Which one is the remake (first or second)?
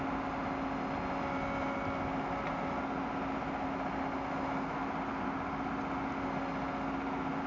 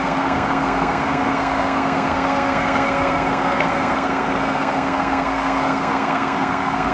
second